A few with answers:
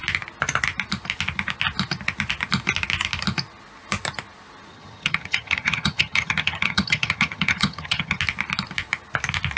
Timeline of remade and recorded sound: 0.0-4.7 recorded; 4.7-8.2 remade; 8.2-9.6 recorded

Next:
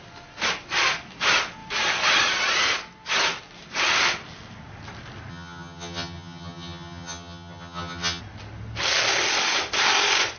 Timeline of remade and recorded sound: 0.0-5.3 recorded; 5.3-8.2 remade; 8.2-10.4 recorded

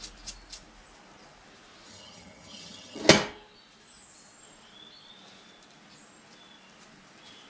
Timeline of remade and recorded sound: 0.0-1.9 recorded; 1.9-3.0 remade; 3.0-7.5 recorded

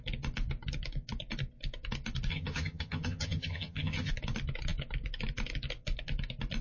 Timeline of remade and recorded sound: 0.0-2.3 recorded; 2.3-4.1 remade; 4.1-6.6 recorded

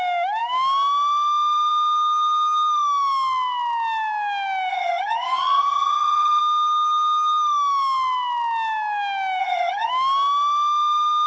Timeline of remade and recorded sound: 0.0-4.7 recorded; 4.7-6.4 remade; 6.4-9.4 recorded; 9.4-9.9 remade; 9.9-11.3 recorded

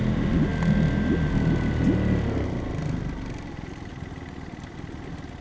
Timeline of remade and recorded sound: 0.0-5.4 recorded